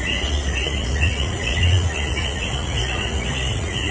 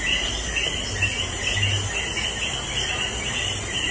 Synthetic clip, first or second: first